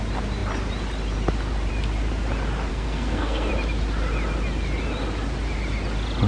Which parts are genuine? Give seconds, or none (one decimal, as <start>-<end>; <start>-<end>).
0.0-2.7; 3.5-6.3